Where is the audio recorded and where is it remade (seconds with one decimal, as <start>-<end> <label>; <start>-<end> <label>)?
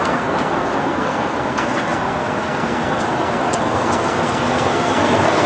0.0-5.5 remade